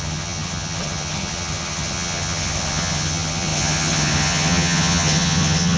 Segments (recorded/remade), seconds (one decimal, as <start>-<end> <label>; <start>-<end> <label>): 0.0-5.8 remade